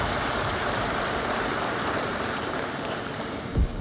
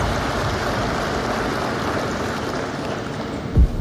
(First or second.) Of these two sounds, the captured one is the second